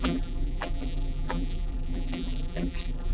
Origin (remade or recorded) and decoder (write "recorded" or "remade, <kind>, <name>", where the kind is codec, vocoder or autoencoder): remade, vocoder, BigVGAN v2